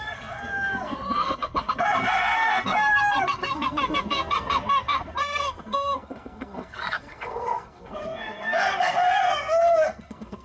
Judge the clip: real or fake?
fake